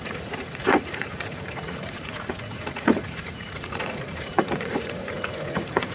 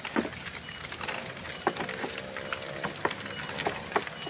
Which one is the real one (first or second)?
second